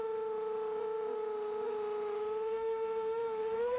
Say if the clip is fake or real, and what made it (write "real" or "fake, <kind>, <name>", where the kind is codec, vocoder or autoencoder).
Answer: fake, autoencoder, DAC-VAE